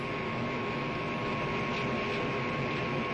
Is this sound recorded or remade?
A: recorded